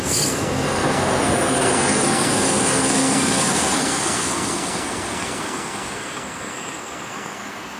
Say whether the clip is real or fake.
fake